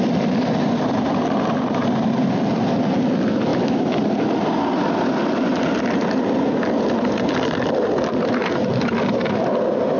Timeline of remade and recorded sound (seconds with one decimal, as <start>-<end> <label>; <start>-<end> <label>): 0.0-3.5 recorded; 3.5-4.0 remade; 4.0-10.0 recorded